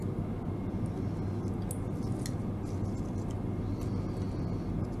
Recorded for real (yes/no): yes